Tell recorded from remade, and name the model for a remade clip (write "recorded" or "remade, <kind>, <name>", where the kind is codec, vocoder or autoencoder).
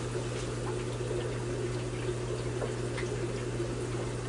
recorded